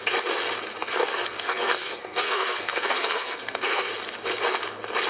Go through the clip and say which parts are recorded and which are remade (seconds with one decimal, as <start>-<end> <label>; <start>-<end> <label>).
0.0-0.8 recorded; 0.8-3.9 remade; 3.9-5.1 recorded